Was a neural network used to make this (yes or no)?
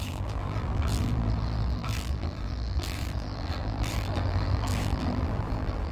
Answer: yes